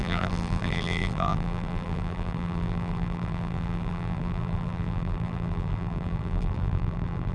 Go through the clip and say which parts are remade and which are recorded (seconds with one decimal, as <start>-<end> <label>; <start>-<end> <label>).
0.0-7.3 remade